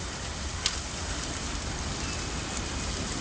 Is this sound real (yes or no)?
yes